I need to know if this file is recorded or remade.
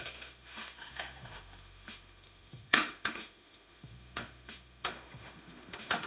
remade